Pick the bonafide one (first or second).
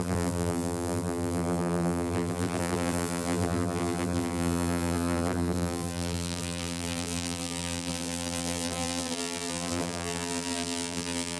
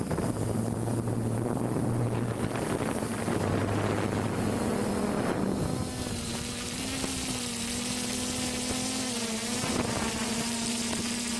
second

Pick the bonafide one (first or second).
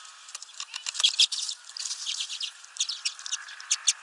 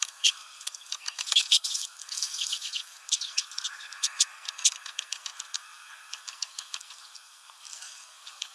first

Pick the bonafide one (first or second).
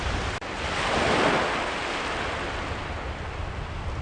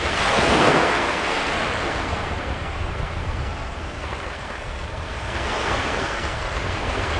first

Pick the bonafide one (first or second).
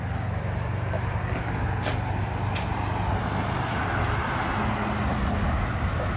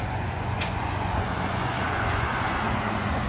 first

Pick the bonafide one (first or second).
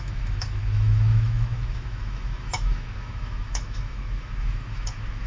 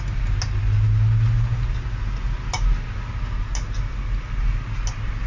second